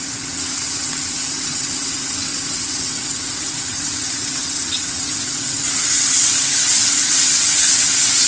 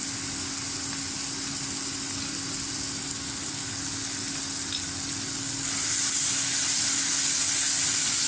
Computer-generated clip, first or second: first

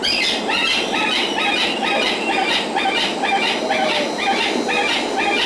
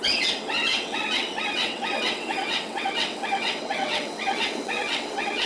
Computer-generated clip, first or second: second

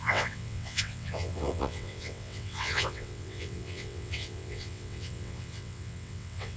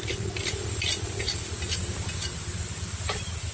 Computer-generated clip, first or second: first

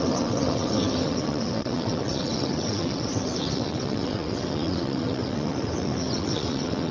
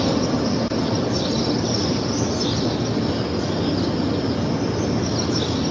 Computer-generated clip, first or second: first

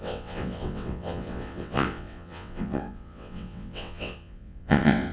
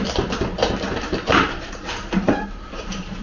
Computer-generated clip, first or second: first